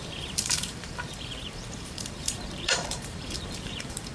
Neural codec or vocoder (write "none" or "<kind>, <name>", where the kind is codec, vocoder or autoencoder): vocoder, BigVGAN v2